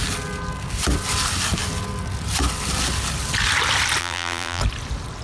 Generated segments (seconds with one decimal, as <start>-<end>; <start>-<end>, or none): 4.0-4.6